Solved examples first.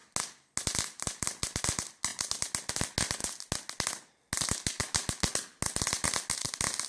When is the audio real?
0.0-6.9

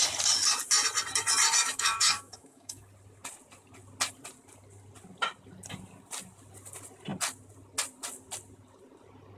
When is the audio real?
0.0-1.6; 2.8-9.4

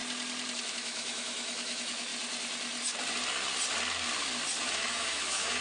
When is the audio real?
0.0-0.7; 2.1-4.6

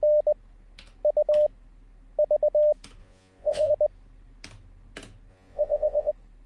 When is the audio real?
0.0-3.0; 3.7-5.3; 6.1-6.5